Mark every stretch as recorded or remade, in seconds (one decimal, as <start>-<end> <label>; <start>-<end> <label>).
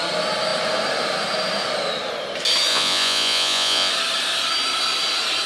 0.0-2.7 recorded; 2.7-3.9 remade; 3.9-5.5 recorded